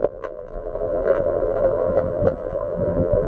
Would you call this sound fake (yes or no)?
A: yes